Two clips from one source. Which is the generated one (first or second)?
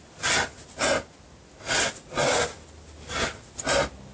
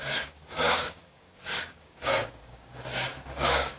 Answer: second